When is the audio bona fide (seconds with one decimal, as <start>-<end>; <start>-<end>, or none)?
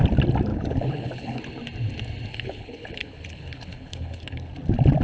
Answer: 0.0-0.5; 1.4-2.3; 4.5-5.0